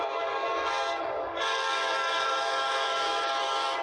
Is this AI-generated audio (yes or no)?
yes